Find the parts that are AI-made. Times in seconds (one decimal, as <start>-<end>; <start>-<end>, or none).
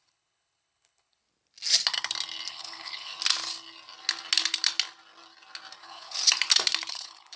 0.0-1.2; 2.5-3.1; 5.8-6.2; 6.9-7.4